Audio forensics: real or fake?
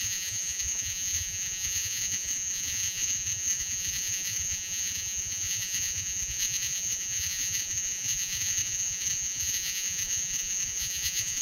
fake